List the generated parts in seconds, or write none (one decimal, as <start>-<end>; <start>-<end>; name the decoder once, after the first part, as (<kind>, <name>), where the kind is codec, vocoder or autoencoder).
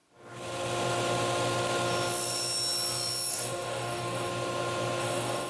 3.3-4.3 (codec, DAC); 5.0-5.5